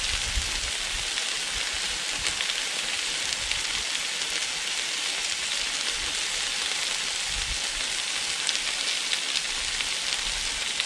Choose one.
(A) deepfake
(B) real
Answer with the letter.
B